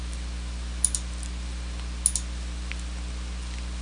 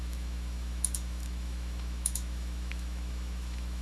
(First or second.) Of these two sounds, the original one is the first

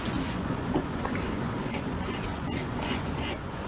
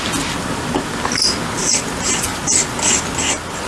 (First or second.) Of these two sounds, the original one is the second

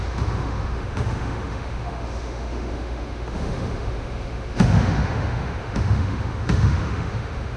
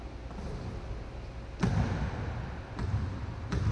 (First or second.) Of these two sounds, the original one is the second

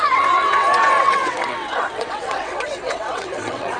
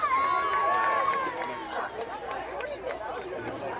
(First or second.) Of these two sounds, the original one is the second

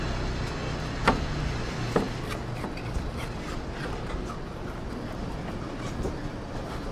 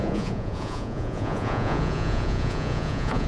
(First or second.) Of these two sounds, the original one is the first